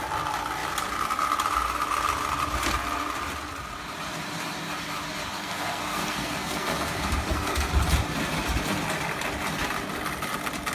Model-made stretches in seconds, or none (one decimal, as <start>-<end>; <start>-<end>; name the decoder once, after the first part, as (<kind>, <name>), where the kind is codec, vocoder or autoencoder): 5.4-7.7 (codec, SNAC)